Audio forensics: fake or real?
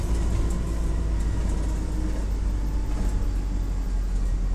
real